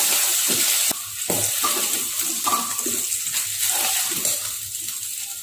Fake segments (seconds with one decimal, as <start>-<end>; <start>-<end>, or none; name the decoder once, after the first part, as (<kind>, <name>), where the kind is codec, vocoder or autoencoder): none